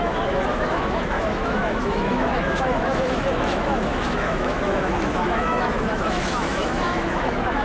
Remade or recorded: remade